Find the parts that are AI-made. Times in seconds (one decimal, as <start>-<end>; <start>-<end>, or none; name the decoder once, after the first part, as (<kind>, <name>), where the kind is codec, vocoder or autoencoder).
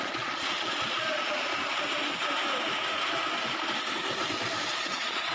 0.0-1.5 (vocoder, Vocos); 4.7-5.3